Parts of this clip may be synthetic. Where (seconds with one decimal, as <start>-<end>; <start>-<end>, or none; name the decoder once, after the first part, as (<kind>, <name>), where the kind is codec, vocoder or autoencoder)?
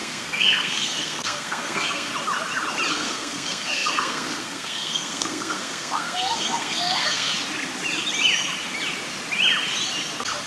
0.0-2.1 (codec, SNAC); 2.9-7.3